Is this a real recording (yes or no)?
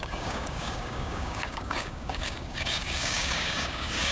no